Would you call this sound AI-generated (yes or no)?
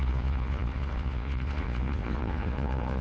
yes